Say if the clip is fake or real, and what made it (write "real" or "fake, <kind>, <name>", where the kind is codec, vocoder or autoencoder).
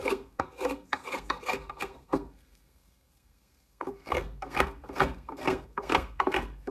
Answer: fake, codec, SNAC